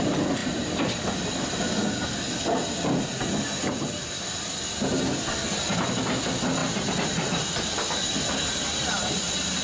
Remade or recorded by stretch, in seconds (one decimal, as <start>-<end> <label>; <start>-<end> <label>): 0.0-9.6 recorded